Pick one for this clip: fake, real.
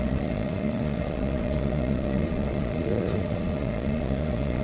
fake